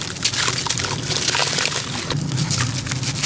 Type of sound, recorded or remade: recorded